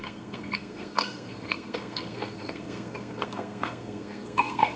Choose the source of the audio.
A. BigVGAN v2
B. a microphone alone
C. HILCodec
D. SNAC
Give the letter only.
D